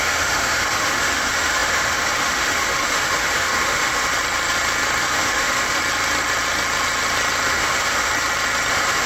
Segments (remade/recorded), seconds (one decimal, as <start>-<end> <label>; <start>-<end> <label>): 0.0-4.1 remade; 4.1-5.0 recorded; 5.0-5.8 remade; 5.8-7.5 recorded; 7.5-8.1 remade; 8.1-8.7 recorded; 8.7-9.1 remade